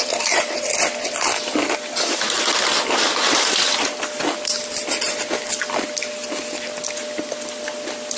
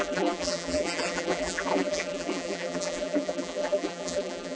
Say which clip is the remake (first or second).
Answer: second